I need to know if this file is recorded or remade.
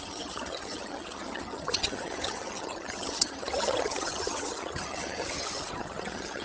remade